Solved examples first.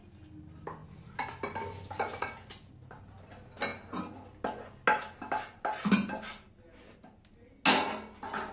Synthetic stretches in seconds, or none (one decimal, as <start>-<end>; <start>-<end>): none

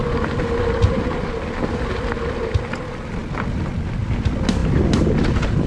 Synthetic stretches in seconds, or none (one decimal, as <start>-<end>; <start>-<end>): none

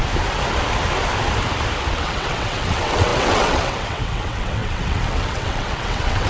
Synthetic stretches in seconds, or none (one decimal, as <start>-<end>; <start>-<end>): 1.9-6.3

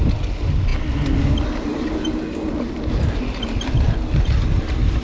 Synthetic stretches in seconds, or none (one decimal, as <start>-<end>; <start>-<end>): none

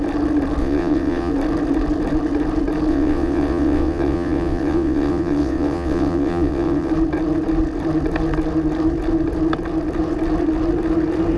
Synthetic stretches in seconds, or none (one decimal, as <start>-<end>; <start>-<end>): 0.6-1.3; 2.9-6.9

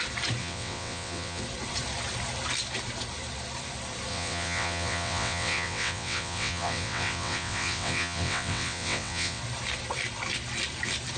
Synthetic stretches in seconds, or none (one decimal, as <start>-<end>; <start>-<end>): 0.4-1.4; 4.1-9.4

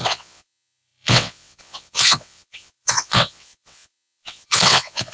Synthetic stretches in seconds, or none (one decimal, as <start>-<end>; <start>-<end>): 0.0-5.1

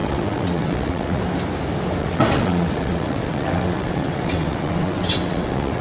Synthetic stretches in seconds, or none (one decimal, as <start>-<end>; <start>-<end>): 0.0-1.2; 2.0-5.8